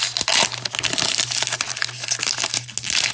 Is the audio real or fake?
real